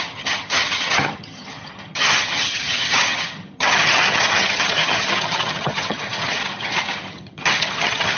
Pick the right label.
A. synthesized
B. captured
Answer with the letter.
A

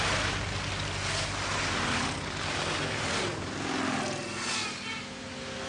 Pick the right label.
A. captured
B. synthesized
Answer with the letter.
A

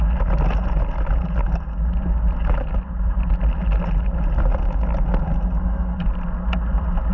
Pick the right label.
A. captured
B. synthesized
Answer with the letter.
A